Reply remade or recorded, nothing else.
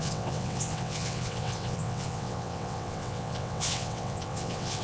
remade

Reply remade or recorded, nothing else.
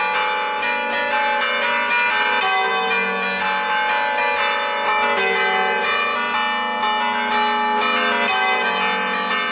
recorded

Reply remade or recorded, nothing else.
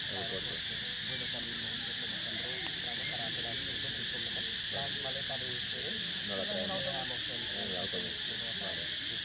recorded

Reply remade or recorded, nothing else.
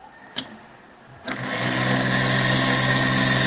recorded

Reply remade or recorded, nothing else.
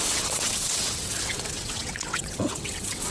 remade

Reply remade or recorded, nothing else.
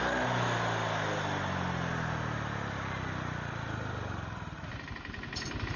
recorded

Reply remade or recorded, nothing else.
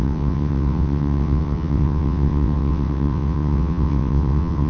remade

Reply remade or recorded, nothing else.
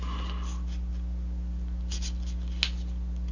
recorded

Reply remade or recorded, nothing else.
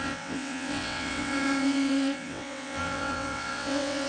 remade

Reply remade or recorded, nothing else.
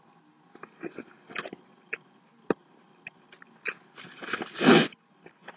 recorded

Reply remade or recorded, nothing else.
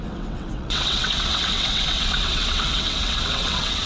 remade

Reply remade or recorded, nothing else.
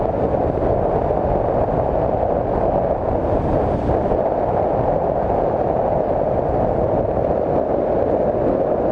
recorded